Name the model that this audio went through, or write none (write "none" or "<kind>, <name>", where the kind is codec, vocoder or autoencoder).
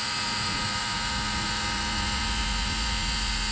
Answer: vocoder, Vocos